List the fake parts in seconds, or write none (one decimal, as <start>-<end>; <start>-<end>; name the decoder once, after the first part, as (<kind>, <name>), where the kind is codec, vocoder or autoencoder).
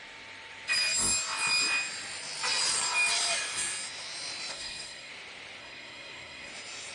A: 4.5-5.1 (codec, SNAC); 5.6-6.5